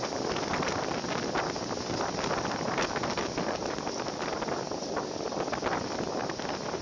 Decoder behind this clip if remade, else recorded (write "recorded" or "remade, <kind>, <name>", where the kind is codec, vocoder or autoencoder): recorded